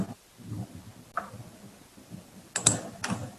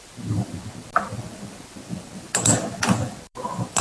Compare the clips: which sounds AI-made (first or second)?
second